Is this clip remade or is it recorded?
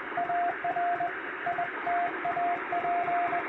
recorded